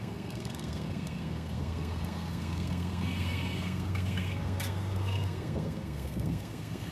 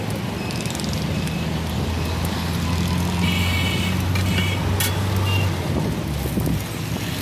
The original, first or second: second